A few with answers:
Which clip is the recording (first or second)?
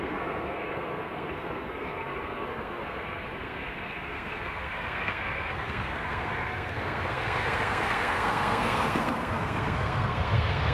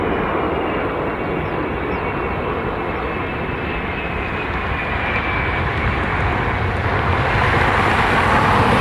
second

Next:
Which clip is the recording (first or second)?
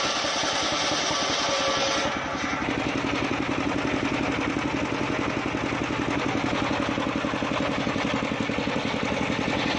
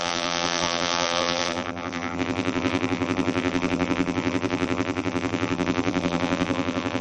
first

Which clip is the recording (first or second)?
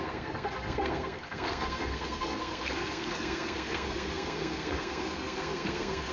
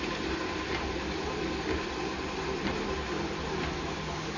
second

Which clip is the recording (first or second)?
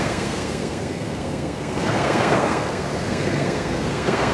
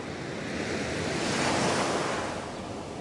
second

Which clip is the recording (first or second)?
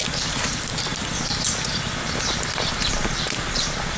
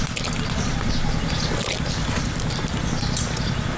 second